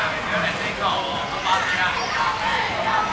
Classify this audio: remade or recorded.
recorded